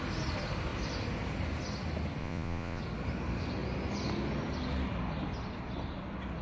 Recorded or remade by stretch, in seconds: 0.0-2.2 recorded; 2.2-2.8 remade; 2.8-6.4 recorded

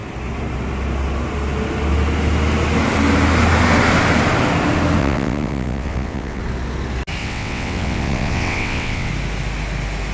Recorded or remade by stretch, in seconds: 0.0-5.0 recorded; 5.0-6.4 remade; 6.4-7.2 recorded; 7.2-9.1 remade; 9.1-10.1 recorded